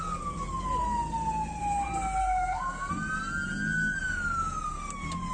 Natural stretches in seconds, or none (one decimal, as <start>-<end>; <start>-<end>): 0.0-2.2; 2.9-5.3